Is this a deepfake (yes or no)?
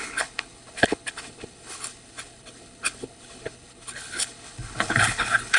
yes